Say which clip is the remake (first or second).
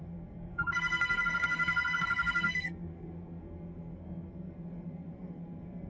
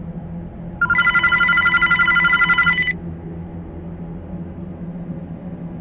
first